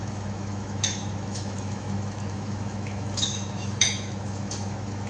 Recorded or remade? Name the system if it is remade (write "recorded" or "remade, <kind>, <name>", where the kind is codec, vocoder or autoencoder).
remade, autoencoder, DAC-VAE